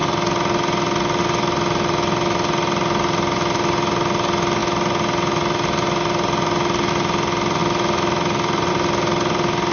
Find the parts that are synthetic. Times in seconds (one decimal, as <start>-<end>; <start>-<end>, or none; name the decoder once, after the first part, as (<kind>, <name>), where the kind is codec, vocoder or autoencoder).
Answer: none